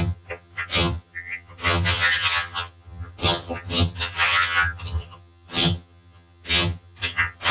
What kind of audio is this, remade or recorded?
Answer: remade